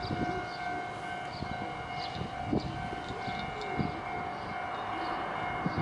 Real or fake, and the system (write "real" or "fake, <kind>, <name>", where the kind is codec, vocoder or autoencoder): real